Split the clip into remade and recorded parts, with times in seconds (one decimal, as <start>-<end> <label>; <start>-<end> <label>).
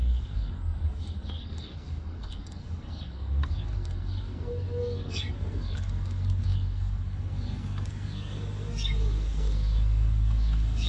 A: 0.0-10.9 remade